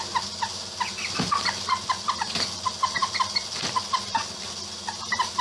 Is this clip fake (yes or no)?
no